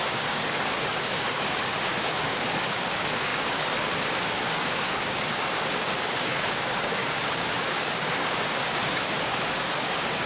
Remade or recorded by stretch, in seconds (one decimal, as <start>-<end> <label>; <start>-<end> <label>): 0.0-10.3 remade

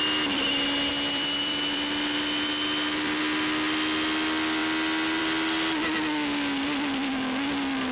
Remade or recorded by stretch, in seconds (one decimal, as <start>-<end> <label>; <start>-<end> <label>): 0.0-0.9 recorded; 0.9-3.2 remade; 3.2-7.9 recorded

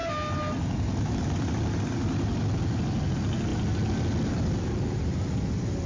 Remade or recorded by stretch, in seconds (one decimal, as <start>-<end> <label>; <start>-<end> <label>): 0.0-5.9 recorded

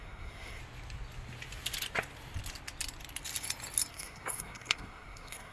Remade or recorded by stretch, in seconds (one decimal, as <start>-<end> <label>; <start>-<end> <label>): 0.0-0.6 remade; 0.6-3.9 recorded; 3.9-5.5 remade

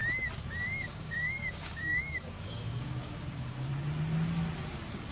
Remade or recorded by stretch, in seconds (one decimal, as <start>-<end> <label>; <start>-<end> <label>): 0.0-0.6 recorded; 0.6-3.7 remade; 3.7-5.1 recorded

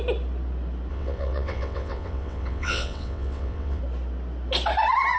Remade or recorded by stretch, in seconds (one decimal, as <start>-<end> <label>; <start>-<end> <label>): 0.0-0.9 recorded; 0.9-3.8 remade; 3.8-5.2 recorded